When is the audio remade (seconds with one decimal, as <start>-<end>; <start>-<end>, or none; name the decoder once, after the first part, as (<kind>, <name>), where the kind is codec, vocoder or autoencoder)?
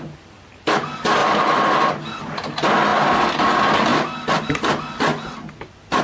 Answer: 2.9-3.4 (vocoder, BigVGAN v2); 3.9-4.4